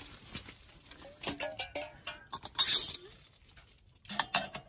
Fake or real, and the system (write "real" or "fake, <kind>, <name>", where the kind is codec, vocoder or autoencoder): real